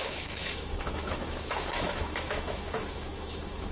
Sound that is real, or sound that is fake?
fake